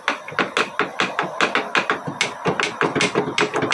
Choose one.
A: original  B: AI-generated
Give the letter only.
A